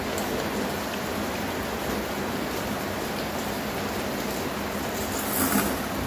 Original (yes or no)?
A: yes